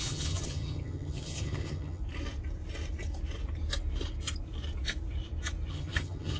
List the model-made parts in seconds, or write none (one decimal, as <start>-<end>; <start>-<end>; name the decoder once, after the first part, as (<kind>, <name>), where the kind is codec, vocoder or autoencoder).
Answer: 0.0-2.0 (vocoder, HiFi-GAN); 5.7-6.4

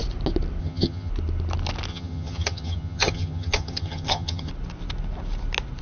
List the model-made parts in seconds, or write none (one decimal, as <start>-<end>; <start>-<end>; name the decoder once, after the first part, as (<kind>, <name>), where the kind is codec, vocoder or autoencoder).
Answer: 0.6-1.1 (vocoder, HiFi-GAN); 1.9-4.5

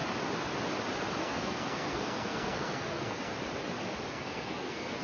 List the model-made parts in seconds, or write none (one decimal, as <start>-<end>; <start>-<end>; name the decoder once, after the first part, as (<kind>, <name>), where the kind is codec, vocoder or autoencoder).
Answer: 1.2-3.3 (codec, SNAC); 4.1-5.0

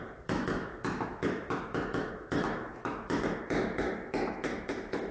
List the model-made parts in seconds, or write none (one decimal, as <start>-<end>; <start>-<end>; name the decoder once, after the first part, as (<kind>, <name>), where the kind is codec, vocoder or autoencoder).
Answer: 0.0-5.1 (autoencoder, DAC-VAE)